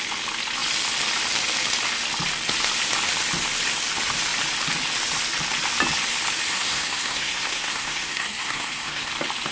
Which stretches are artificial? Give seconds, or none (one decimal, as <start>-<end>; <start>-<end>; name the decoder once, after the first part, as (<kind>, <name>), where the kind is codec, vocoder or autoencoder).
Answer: 6.5-9.1 (codec, SNAC)

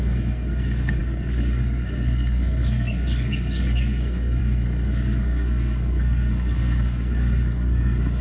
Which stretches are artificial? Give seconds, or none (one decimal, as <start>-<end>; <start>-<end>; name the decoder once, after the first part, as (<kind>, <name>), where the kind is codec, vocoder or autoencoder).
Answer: 0.0-8.2 (codec, SNAC)

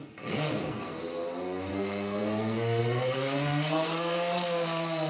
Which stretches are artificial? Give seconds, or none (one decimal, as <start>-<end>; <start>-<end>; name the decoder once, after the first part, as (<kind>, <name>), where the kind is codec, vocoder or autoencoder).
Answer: 0.0-0.9 (codec, SNAC); 1.7-5.1

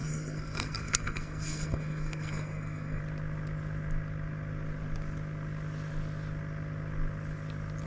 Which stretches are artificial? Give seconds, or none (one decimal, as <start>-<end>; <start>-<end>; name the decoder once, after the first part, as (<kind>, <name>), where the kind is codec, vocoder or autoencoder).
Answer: 0.0-3.0 (codec, SNAC)

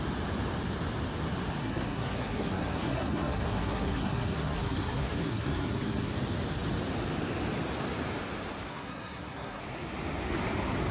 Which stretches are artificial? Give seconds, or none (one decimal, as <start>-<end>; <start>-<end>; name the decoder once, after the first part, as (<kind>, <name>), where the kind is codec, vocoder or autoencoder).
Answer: 1.6-6.1 (codec, SNAC); 8.7-9.6